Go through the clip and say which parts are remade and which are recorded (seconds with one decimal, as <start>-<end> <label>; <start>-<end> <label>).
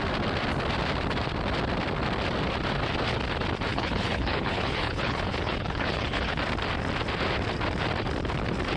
0.0-3.7 recorded; 3.7-6.4 remade; 6.4-8.8 recorded